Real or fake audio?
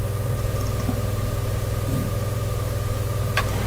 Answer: real